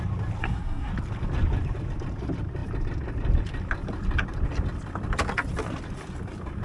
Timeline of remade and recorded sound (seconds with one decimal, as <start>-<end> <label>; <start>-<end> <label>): 0.0-0.4 recorded; 0.4-0.9 remade; 0.9-6.6 recorded